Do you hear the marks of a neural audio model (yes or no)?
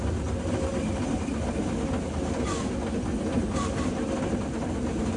no